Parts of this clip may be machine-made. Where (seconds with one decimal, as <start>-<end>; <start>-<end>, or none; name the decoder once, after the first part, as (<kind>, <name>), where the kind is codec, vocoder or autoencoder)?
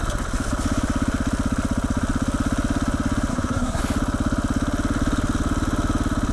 3.3-3.8 (codec, SNAC)